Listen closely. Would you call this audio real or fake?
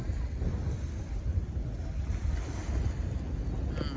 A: real